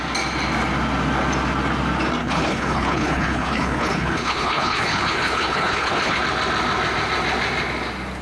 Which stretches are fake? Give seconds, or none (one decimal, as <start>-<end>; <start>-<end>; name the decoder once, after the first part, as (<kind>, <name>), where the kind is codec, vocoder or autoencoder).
2.2-6.2 (codec, HILCodec)